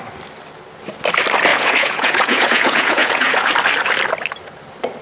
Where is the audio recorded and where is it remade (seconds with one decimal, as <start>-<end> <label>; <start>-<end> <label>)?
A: 0.0-1.5 recorded; 1.5-3.5 remade; 3.5-5.0 recorded